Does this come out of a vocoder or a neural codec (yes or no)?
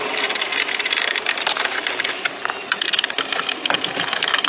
yes